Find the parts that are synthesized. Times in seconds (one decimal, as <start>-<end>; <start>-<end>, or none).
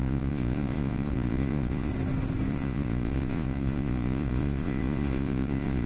0.0-1.9; 2.5-5.9